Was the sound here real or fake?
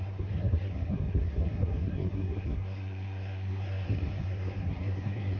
fake